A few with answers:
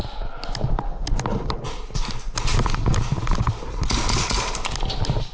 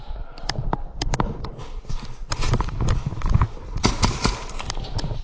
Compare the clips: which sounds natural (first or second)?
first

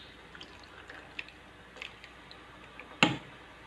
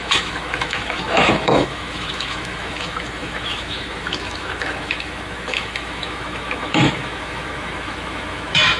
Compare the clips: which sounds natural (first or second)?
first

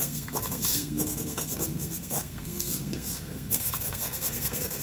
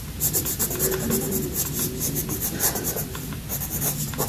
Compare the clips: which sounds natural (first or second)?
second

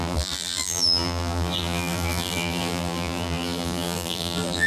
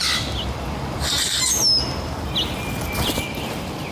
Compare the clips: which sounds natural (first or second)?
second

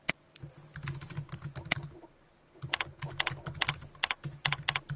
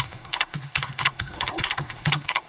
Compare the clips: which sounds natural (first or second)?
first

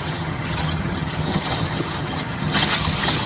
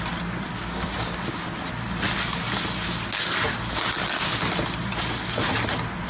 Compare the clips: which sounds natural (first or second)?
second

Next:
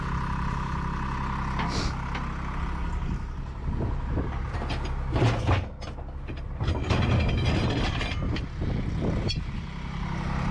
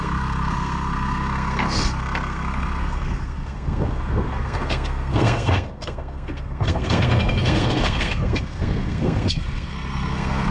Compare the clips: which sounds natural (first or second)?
first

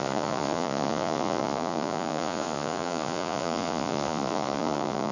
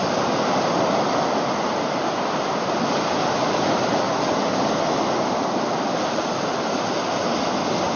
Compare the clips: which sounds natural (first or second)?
second